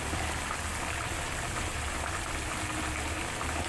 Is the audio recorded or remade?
recorded